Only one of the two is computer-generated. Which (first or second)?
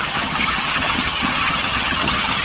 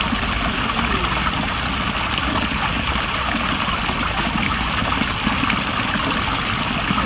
first